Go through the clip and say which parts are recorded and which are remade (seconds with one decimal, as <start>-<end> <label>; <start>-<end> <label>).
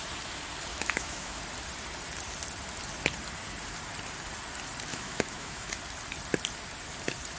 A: 0.0-0.7 recorded; 0.7-1.4 remade; 1.4-4.9 recorded; 4.9-5.7 remade; 5.7-7.4 recorded